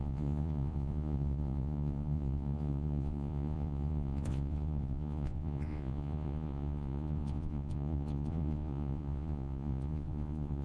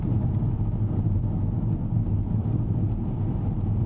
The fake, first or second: first